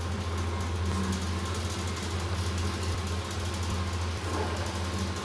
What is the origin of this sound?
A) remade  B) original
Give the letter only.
B